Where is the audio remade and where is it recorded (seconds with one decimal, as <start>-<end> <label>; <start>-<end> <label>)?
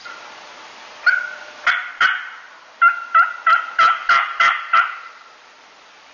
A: 0.0-6.1 remade